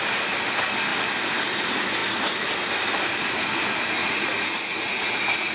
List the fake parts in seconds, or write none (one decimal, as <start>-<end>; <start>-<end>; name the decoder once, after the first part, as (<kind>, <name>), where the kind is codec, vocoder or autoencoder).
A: 4.0-5.5 (vocoder, Vocos)